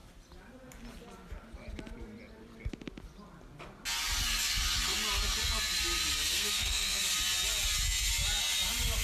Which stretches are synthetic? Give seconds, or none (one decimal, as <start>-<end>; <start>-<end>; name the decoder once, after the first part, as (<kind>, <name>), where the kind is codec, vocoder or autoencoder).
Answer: 6.3-7.0 (codec, SNAC)